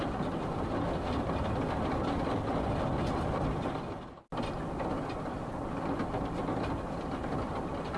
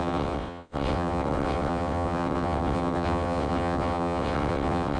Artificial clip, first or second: second